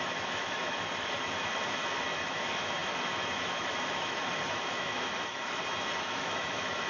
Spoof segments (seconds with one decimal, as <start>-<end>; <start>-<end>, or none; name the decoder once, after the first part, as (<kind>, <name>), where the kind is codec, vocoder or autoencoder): 0.0-6.9 (autoencoder, DAC-VAE)